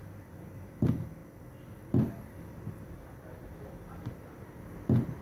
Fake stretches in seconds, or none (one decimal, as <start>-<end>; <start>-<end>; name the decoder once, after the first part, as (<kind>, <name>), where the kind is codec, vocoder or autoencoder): none

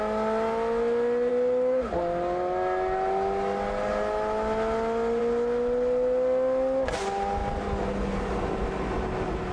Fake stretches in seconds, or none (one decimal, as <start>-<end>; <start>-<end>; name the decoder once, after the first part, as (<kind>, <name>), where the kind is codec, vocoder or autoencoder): none